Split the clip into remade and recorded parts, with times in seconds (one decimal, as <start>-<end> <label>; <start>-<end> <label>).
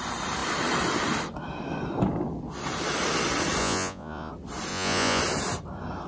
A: 0.0-3.6 recorded; 3.6-4.3 remade; 4.3-4.7 recorded; 4.7-5.2 remade; 5.2-6.1 recorded